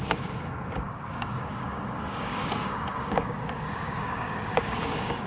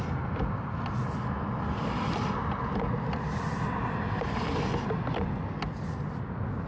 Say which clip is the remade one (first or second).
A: first